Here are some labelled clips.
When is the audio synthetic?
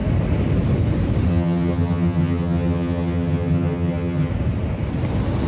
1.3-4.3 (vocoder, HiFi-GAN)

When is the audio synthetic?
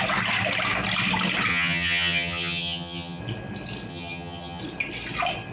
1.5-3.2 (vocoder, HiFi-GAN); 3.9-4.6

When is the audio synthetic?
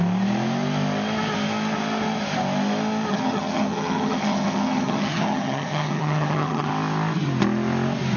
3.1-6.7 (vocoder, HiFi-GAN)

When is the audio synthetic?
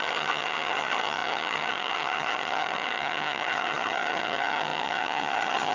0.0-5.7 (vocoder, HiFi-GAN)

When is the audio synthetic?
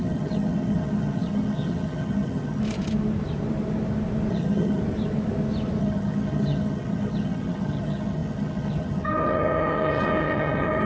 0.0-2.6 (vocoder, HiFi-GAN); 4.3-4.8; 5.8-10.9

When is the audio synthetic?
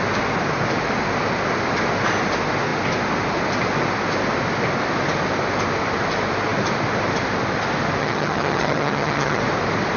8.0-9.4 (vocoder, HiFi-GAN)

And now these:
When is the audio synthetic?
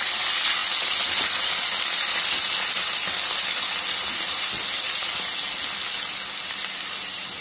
none